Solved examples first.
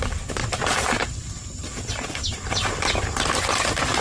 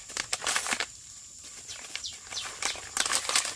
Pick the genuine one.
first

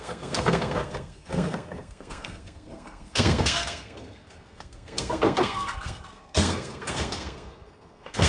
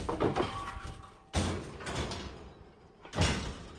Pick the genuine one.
second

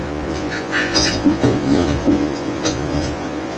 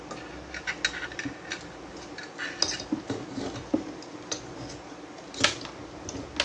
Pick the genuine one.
second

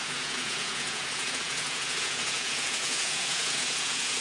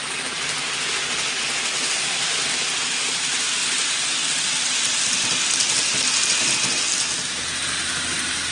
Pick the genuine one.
second